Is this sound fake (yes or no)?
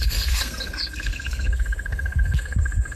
yes